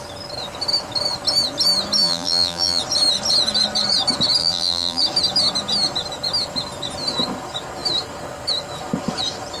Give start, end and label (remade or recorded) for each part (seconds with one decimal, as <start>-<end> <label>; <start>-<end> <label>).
0.0-2.0 recorded; 2.0-2.8 remade; 2.8-4.4 recorded; 4.4-5.0 remade; 5.0-9.6 recorded